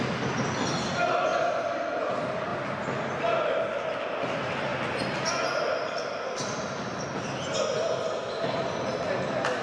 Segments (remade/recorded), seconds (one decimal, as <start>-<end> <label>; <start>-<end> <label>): 0.0-9.6 recorded